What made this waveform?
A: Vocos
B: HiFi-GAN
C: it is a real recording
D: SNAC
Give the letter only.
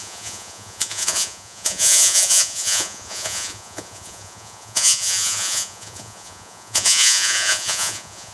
A